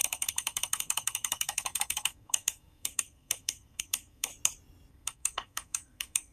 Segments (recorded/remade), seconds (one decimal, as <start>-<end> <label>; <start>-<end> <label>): 0.0-4.3 remade; 4.3-4.9 recorded; 4.9-6.3 remade